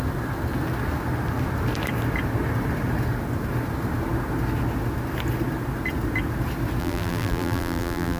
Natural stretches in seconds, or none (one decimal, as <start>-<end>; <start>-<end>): 0.0-6.8